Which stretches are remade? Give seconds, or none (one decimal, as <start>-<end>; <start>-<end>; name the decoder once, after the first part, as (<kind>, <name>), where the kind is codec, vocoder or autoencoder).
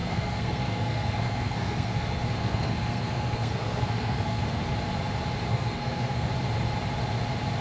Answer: 0.0-4.6 (codec, SNAC); 5.5-6.3